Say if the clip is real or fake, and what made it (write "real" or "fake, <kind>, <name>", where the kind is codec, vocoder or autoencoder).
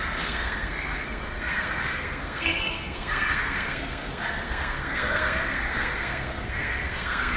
fake, codec, SNAC